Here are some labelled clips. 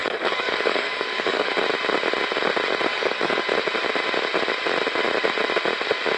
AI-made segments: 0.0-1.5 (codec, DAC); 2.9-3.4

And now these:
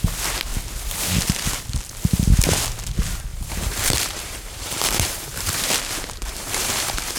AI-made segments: 3.3-5.5 (vocoder, BigVGAN v2); 6.2-7.2

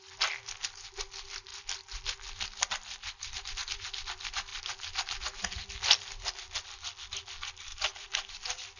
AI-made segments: 7.7-8.3 (vocoder, BigVGAN v2)

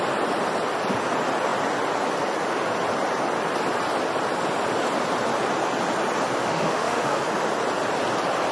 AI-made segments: 6.4-7.2 (autoencoder, DAC-VAE)

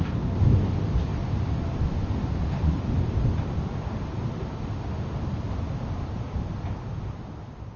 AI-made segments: none

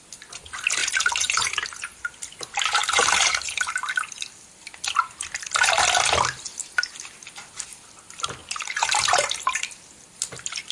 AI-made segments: 0.8-2.2 (vocoder, BigVGAN v2); 2.8-3.5; 8.4-9.7